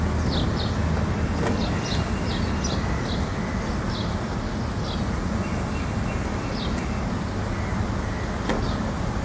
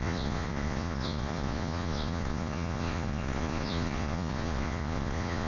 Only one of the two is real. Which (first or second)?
first